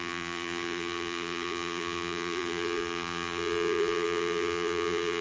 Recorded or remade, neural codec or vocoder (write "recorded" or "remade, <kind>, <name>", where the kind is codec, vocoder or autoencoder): remade, vocoder, BigVGAN v2